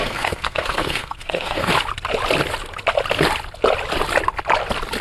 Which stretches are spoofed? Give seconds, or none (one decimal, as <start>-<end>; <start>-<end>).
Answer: 0.0-1.7